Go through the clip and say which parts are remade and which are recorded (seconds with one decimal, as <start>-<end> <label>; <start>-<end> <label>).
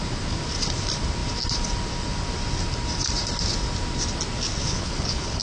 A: 0.0-4.6 recorded; 4.6-5.4 remade